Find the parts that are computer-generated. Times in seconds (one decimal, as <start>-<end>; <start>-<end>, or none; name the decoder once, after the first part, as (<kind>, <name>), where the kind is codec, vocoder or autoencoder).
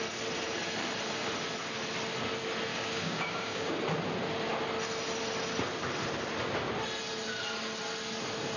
2.7-3.8 (codec, DAC)